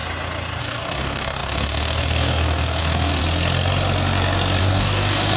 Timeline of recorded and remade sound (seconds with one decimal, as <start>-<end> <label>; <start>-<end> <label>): 0.0-0.6 recorded; 0.6-3.2 remade; 3.2-4.6 recorded; 4.6-5.4 remade